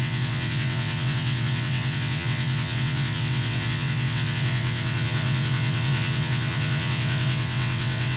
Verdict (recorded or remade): remade